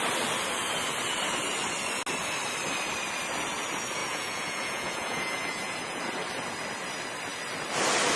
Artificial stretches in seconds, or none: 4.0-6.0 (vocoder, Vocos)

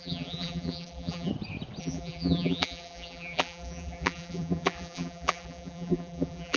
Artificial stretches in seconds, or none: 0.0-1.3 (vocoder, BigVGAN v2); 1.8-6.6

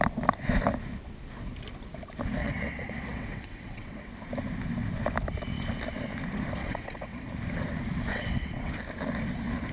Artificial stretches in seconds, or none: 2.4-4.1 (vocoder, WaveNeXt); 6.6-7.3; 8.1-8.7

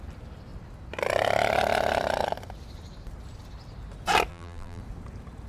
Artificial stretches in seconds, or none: 4.3-4.8 (vocoder, BigVGAN v2)